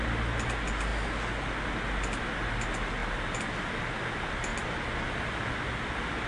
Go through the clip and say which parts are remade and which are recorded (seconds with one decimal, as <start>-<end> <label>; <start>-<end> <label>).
0.0-6.3 recorded